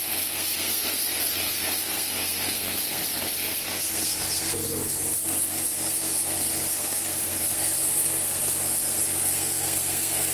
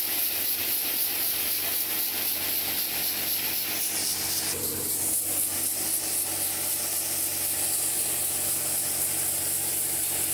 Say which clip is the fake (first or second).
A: first